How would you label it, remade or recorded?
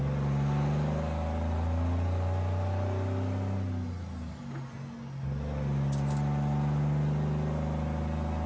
recorded